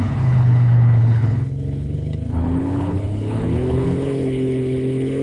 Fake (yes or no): yes